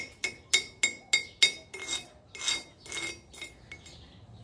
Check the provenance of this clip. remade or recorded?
recorded